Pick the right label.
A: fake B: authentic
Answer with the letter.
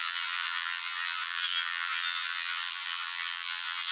A